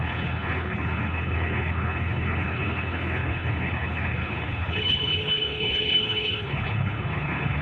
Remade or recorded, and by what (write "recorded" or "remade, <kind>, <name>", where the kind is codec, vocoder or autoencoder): remade, codec, HILCodec